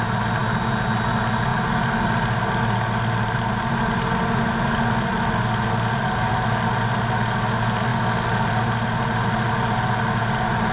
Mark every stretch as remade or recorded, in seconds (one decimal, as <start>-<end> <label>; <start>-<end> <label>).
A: 0.0-10.7 recorded